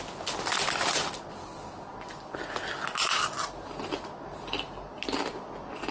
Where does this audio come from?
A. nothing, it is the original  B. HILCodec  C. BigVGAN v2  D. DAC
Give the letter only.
A